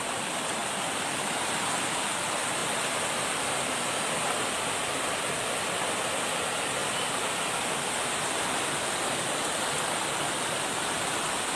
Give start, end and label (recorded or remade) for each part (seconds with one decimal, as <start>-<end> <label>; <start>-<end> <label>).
0.0-2.6 recorded; 2.6-3.1 remade; 3.1-6.8 recorded; 6.8-7.5 remade; 7.5-11.6 recorded